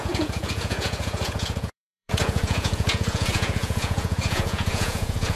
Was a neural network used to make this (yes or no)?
yes